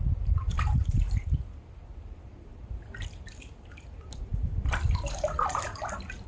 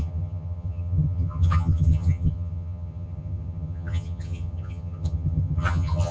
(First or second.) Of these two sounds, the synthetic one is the second